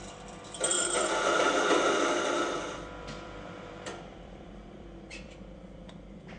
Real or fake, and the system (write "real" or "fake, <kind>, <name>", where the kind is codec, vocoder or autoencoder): fake, vocoder, BigVGAN v2